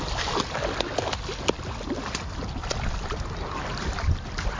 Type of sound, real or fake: real